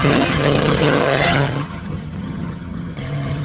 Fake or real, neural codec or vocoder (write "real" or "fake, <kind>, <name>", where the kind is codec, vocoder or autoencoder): fake, vocoder, HiFi-GAN